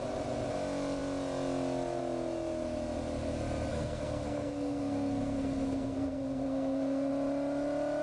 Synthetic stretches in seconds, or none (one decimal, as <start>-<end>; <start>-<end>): 3.7-7.1